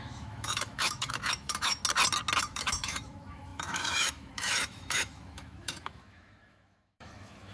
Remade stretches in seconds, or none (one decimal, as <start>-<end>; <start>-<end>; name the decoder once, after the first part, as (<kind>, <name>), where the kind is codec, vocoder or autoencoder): 0.0-1.8 (autoencoder, DAC-VAE); 2.4-7.5